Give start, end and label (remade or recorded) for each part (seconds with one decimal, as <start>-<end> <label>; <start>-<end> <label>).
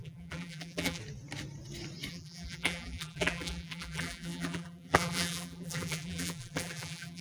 0.0-1.0 remade; 1.0-2.1 recorded; 2.1-7.2 remade